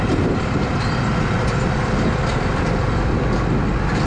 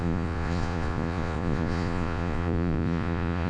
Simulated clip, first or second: second